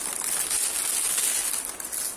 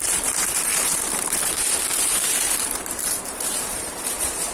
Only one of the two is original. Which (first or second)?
first